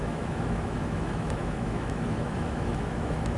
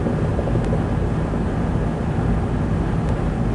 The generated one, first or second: first